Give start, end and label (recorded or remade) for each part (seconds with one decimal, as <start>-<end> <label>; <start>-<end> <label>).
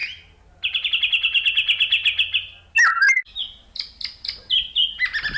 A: 0.0-5.4 recorded